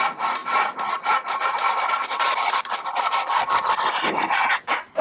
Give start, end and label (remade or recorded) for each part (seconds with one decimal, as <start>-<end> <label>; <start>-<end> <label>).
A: 0.0-5.0 recorded